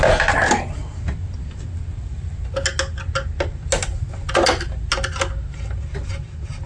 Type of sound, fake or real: real